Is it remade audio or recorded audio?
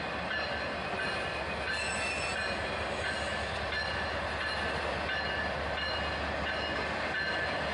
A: recorded